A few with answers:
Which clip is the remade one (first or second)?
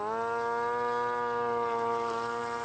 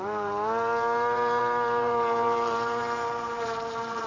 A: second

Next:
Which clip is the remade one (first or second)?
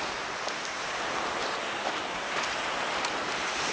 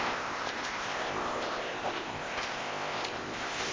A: second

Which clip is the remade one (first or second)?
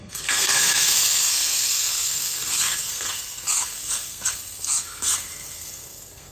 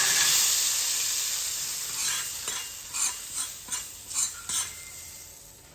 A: first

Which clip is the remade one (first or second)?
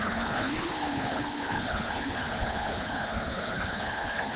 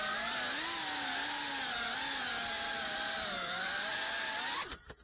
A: first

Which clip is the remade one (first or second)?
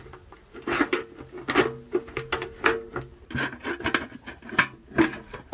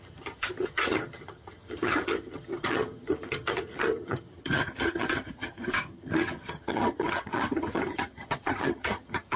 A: second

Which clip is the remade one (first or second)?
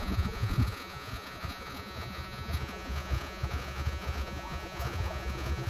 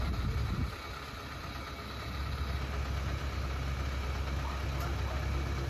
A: first